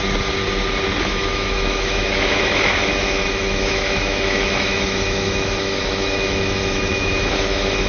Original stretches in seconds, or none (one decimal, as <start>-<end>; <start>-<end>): 0.0-1.0